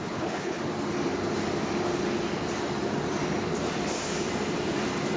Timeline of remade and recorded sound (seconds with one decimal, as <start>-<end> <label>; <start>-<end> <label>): 0.0-0.6 remade; 0.6-5.2 recorded